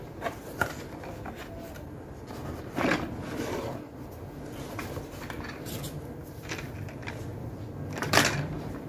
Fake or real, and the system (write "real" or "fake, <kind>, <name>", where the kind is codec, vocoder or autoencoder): real